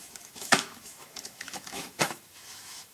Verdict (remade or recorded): remade